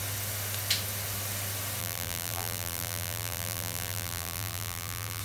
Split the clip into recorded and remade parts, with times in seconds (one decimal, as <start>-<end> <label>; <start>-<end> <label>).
0.0-1.8 recorded; 1.8-5.2 remade